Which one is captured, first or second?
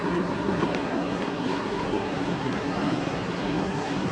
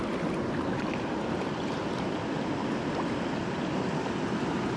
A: second